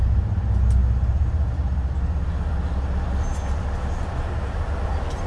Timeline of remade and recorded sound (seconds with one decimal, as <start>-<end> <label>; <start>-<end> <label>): 0.0-5.3 recorded